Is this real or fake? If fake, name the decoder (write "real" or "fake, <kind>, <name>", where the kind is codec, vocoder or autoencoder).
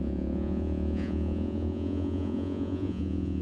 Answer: fake, vocoder, Vocos